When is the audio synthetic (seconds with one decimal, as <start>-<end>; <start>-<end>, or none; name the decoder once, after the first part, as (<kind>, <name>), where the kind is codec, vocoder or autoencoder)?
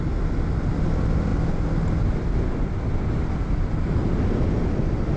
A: none